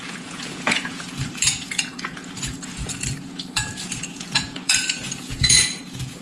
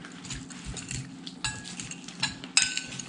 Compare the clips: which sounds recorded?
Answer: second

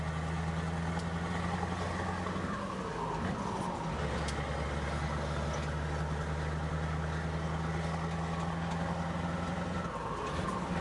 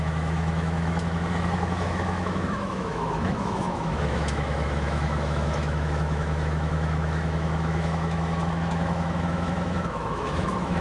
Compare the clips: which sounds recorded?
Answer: first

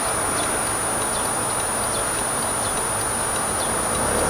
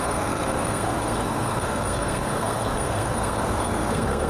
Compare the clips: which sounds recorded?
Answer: first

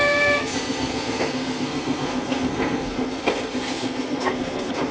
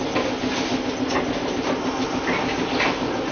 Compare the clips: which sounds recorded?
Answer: second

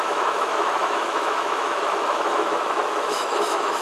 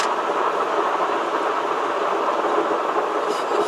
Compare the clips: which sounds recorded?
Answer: second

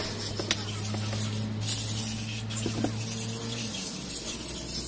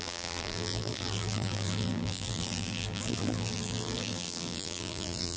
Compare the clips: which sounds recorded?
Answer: first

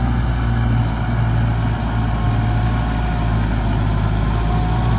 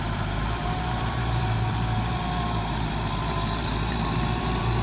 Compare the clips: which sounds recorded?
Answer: first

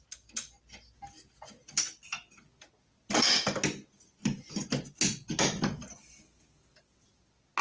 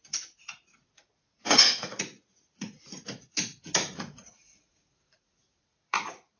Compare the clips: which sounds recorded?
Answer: first